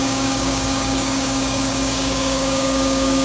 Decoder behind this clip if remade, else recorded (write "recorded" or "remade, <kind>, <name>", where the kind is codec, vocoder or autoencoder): remade, codec, DAC